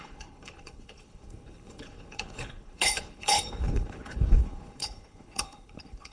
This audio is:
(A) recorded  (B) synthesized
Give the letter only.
B